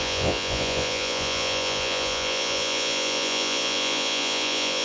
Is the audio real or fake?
fake